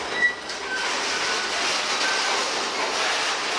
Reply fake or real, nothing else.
real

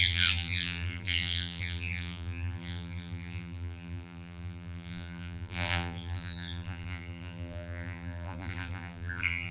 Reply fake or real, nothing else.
fake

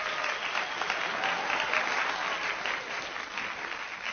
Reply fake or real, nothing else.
real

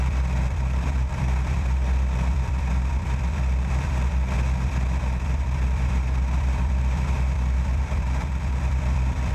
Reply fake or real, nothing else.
fake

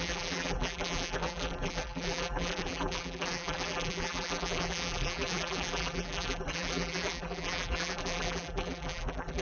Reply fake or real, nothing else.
fake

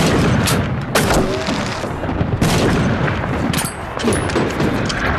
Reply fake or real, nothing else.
real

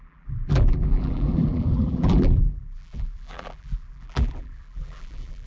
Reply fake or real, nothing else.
fake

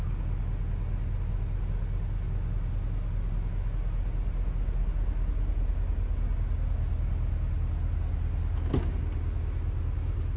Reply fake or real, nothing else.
real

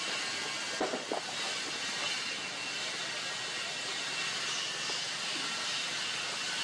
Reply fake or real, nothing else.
real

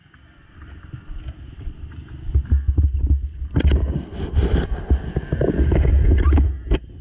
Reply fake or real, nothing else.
real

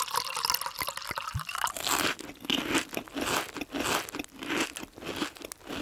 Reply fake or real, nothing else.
real